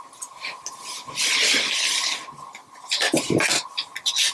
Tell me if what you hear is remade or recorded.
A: recorded